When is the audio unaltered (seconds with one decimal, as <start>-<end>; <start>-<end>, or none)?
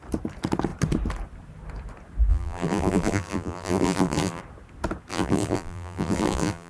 0.0-2.3; 4.4-5.1